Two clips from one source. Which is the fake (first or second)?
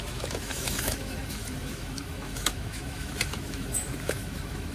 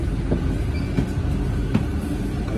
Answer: first